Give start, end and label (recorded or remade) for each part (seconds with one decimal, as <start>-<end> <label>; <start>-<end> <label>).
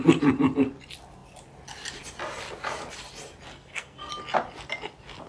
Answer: 0.0-3.5 recorded; 3.5-4.1 remade; 4.1-5.3 recorded